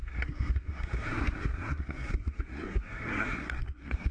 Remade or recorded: remade